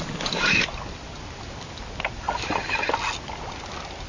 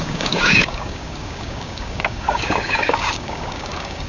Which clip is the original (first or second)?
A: first